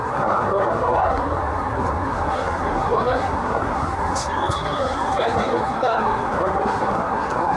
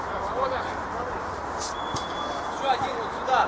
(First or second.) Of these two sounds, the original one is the second